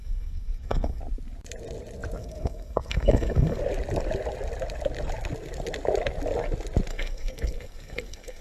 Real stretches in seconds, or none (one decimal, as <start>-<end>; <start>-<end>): 1.0-2.2; 3.6-6.9